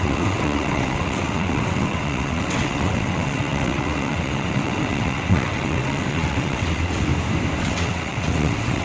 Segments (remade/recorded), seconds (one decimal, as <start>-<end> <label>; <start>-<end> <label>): 0.0-7.1 remade; 7.1-7.6 recorded; 7.6-8.8 remade